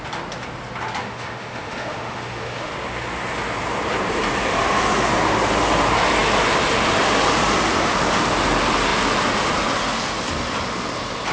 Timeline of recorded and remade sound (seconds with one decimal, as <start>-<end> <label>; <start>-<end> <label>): 0.0-1.0 recorded; 1.0-2.7 remade; 2.7-11.3 recorded